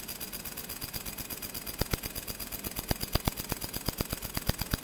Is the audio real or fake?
real